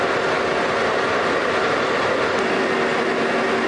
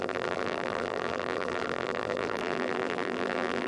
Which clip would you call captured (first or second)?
first